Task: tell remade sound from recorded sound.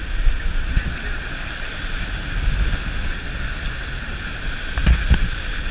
recorded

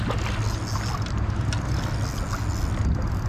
recorded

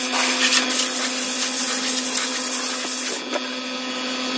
recorded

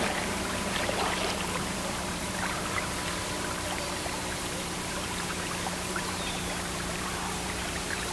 remade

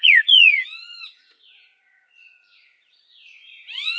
remade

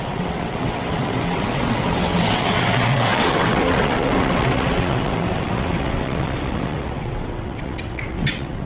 remade